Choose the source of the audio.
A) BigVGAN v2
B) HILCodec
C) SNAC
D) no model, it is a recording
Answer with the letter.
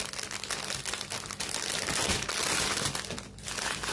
D